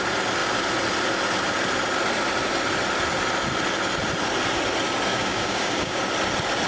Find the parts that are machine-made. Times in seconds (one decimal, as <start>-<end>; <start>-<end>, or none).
5.1-6.0